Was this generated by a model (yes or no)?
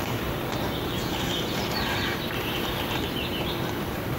yes